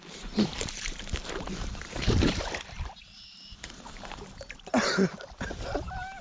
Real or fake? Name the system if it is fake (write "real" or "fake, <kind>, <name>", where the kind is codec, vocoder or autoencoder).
fake, vocoder, BigVGAN v2